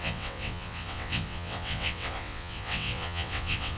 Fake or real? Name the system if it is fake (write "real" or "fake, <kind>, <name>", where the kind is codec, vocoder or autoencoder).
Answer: fake, vocoder, WaveNeXt